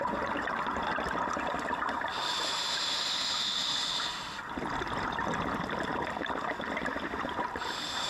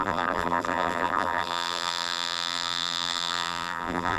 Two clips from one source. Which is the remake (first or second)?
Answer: second